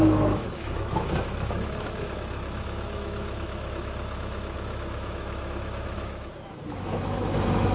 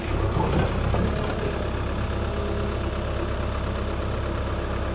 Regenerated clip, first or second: first